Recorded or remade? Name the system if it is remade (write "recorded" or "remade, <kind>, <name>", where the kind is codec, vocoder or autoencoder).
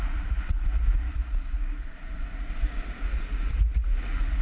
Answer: remade, vocoder, Vocos